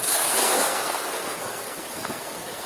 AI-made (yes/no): yes